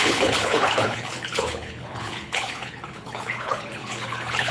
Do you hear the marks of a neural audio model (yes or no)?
yes